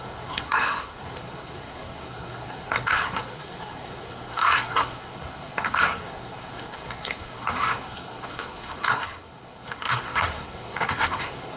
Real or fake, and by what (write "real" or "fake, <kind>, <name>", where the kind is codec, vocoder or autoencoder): fake, codec, SNAC